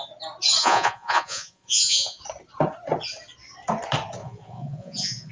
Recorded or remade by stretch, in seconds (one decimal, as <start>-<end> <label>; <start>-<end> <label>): 0.0-0.6 recorded; 0.6-2.2 remade; 2.2-4.2 recorded; 4.2-5.3 remade